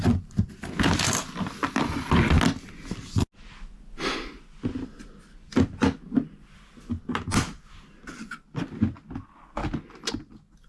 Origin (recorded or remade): recorded